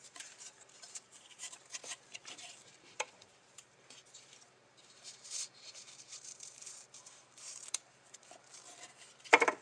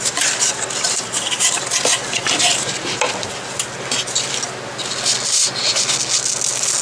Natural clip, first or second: second